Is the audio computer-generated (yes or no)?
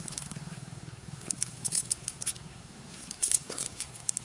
yes